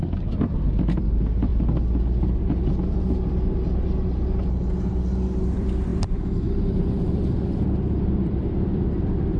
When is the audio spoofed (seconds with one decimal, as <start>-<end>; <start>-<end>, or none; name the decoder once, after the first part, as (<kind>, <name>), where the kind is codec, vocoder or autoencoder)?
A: 0.0-1.5 (vocoder, BigVGAN v2); 5.4-5.9; 6.9-9.4